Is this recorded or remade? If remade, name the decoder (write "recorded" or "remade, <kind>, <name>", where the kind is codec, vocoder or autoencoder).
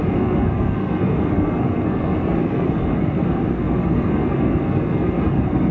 remade, codec, SNAC